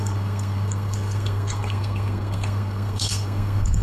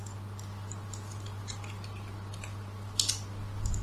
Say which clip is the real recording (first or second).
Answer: second